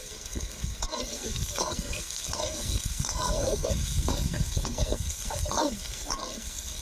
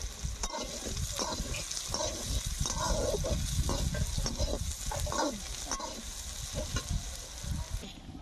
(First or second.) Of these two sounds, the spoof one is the first